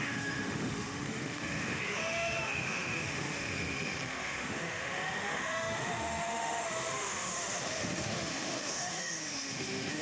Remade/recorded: remade